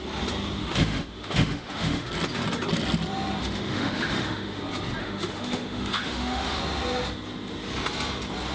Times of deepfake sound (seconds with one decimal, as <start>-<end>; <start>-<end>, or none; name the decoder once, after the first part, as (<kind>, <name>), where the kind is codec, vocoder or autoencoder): 0.6-2.1 (autoencoder, DAC-VAE); 3.4-4.6; 5.0-6.6